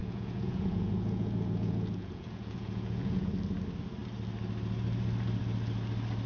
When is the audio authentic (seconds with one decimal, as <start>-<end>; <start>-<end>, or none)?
3.3-6.3